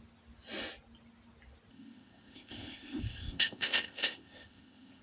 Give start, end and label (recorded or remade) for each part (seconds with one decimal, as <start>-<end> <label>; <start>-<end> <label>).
0.0-1.7 recorded; 1.7-5.0 remade